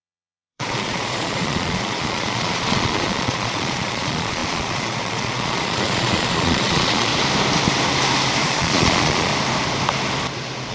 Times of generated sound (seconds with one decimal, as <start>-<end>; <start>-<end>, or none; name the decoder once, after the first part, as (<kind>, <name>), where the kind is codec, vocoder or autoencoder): 0.0-7.1 (vocoder, Vocos); 8.4-9.3

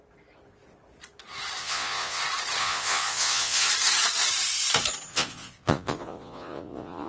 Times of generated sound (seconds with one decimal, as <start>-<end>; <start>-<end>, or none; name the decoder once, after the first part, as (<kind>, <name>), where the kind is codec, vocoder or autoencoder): 1.6-2.2 (vocoder, Vocos); 2.6-3.7; 5.1-7.1

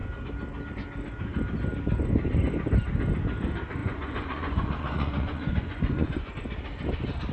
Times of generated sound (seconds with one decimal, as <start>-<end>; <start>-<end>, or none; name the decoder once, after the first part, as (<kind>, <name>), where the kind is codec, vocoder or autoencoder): 3.8-6.3 (vocoder, Vocos)

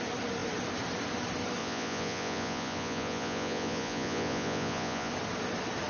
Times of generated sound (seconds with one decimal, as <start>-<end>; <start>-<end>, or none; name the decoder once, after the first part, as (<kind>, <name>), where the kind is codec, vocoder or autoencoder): 1.6-5.1 (vocoder, Vocos)